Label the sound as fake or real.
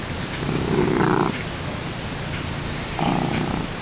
real